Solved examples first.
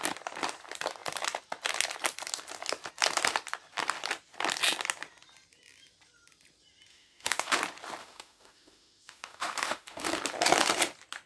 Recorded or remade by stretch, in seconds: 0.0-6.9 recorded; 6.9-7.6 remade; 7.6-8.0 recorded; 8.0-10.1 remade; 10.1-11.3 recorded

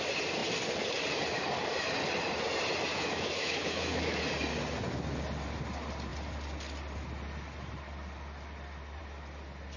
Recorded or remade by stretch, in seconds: 0.0-2.9 recorded; 2.9-4.2 remade; 4.2-9.8 recorded

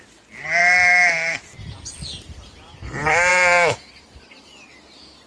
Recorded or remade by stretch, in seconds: 0.0-0.6 recorded; 0.6-1.4 remade; 1.4-3.3 recorded; 3.3-3.9 remade; 3.9-5.3 recorded